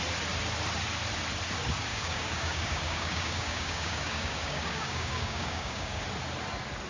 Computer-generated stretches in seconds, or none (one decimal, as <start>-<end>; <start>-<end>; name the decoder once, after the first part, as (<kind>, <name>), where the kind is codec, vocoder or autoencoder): 1.9-6.0 (codec, DAC)